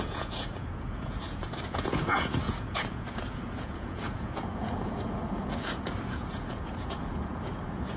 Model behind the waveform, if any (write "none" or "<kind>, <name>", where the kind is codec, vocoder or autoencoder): vocoder, Vocos